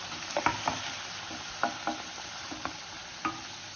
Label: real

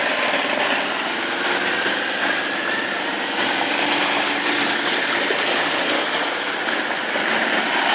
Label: real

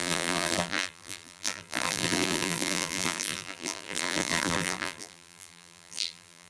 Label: fake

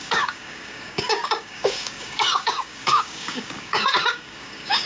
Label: fake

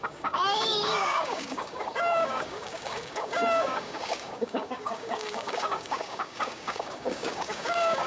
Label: fake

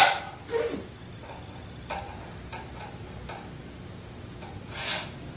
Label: real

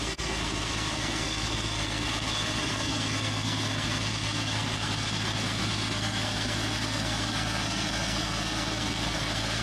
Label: fake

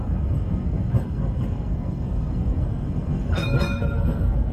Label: fake